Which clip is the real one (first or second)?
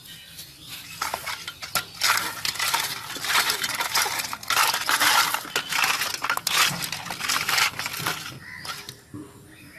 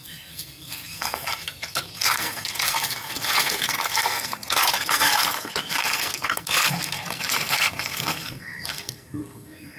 first